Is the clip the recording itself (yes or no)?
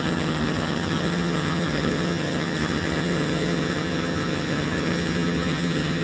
no